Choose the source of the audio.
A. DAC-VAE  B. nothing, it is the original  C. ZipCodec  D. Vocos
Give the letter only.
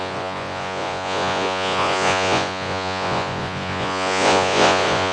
D